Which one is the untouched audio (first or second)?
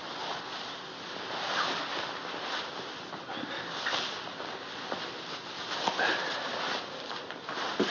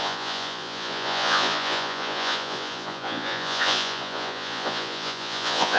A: first